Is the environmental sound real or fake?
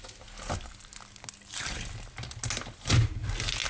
real